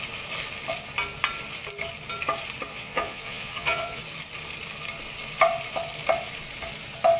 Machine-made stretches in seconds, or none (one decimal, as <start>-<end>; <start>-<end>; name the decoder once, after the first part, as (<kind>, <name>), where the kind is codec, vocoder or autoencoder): 2.7-4.0 (vocoder, Vocos)